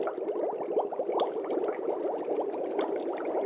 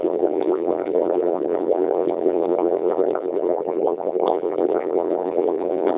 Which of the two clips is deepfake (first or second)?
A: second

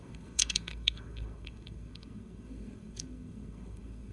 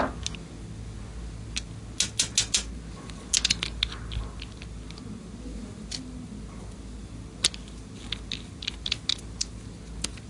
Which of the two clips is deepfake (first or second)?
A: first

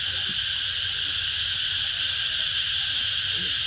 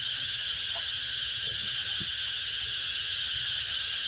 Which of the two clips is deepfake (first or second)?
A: second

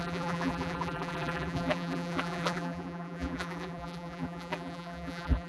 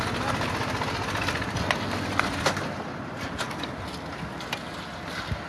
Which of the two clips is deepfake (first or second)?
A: first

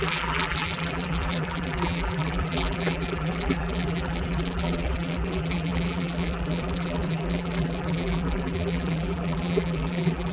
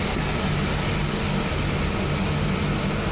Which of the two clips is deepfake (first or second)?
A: first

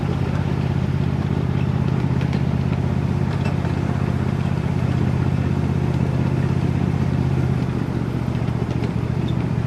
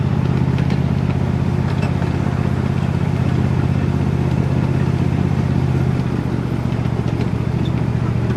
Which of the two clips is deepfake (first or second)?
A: first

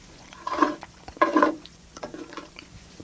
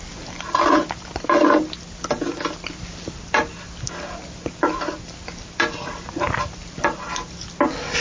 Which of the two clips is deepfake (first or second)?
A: first